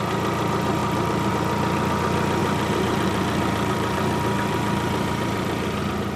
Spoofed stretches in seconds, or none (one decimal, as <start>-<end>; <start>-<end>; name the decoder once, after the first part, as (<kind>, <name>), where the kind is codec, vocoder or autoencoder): 0.8-1.3 (vocoder, BigVGAN v2); 2.4-5.8